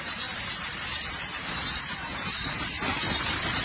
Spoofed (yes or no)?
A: yes